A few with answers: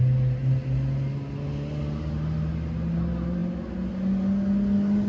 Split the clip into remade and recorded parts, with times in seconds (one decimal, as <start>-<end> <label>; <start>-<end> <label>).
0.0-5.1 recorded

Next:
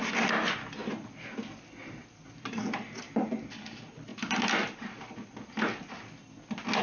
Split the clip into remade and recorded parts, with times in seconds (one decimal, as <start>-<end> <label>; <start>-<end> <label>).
0.0-6.8 recorded

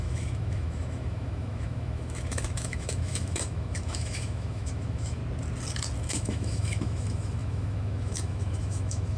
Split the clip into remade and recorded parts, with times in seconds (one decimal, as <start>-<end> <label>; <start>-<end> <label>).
0.0-5.2 remade; 5.2-6.0 recorded; 6.0-9.2 remade

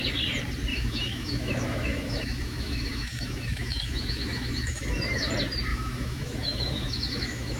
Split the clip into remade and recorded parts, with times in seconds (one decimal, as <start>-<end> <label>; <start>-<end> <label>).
0.0-0.7 recorded; 0.7-5.3 remade; 5.3-5.7 recorded; 5.7-7.6 remade

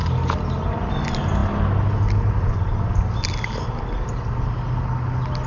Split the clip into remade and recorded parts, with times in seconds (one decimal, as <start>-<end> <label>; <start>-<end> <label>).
0.0-5.5 recorded

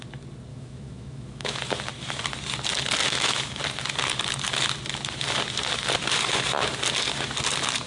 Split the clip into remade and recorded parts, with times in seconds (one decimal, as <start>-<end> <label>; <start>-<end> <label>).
0.0-0.5 recorded; 0.5-1.6 remade; 1.6-3.0 recorded; 3.0-3.6 remade; 3.6-7.9 recorded

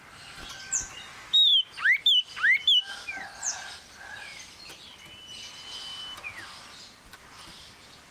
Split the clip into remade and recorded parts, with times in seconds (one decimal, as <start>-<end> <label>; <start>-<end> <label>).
0.0-8.1 recorded

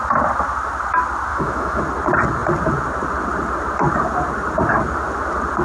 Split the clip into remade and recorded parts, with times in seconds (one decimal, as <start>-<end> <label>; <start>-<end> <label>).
0.0-1.3 recorded; 1.3-1.8 remade; 1.8-5.6 recorded